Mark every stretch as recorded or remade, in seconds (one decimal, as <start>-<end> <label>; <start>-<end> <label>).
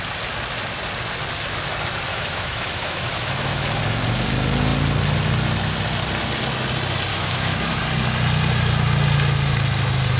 0.0-2.1 recorded; 2.1-3.8 remade; 3.8-7.1 recorded; 7.1-7.8 remade; 7.8-10.2 recorded